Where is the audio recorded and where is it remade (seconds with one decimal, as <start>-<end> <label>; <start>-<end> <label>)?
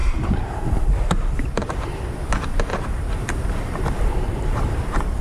0.0-2.0 remade; 2.0-2.7 recorded; 2.7-4.8 remade; 4.8-5.2 recorded